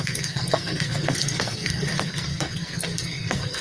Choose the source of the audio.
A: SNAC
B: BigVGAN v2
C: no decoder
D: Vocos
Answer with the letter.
A